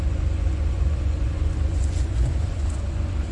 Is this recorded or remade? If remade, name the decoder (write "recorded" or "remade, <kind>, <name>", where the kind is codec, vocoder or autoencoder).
remade, vocoder, Vocos